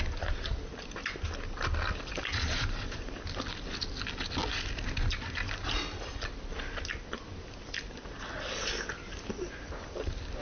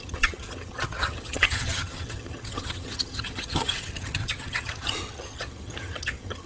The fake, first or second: second